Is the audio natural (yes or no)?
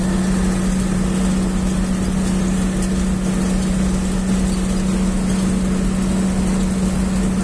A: yes